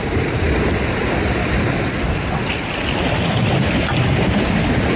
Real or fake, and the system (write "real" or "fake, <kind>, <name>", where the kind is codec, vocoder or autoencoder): real